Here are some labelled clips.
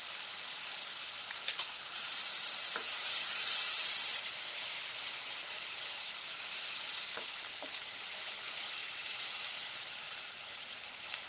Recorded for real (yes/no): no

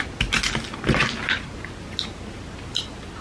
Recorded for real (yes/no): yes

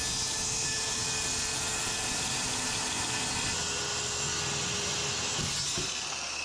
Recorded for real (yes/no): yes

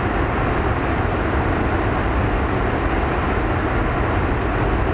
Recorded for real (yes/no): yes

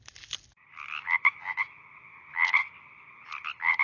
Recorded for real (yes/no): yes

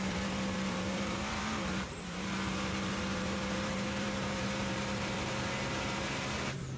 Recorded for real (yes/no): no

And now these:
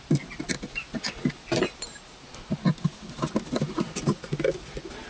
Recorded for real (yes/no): yes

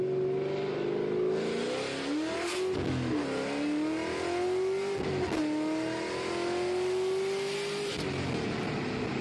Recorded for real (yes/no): yes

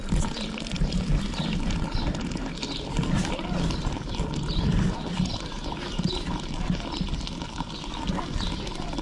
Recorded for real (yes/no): yes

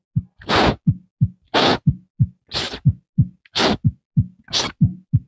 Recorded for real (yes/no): yes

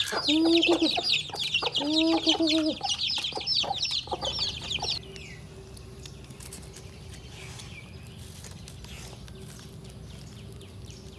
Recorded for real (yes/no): yes